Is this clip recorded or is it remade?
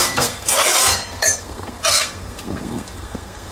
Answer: remade